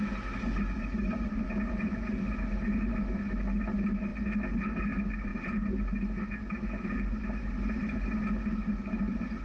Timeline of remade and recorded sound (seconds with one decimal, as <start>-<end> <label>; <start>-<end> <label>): 0.0-9.4 recorded